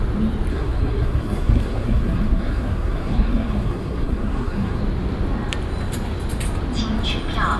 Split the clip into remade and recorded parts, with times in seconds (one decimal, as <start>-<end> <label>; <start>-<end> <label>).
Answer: 0.0-0.5 recorded; 0.5-4.8 remade; 4.8-7.6 recorded